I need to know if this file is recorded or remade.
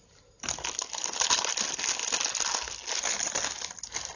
recorded